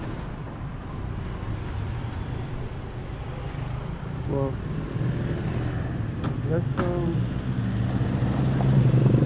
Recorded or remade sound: recorded